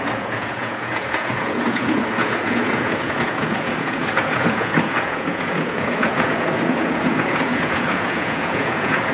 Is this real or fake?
fake